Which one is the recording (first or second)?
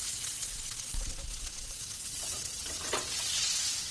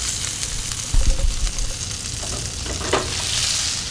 second